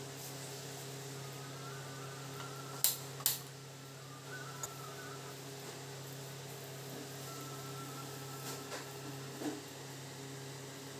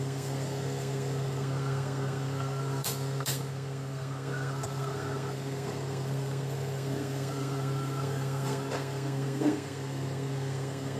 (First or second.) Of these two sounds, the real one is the first